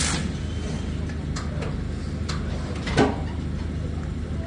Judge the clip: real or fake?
real